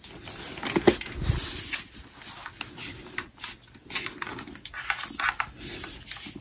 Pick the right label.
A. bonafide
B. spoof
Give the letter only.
A